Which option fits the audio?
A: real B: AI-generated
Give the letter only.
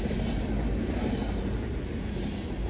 A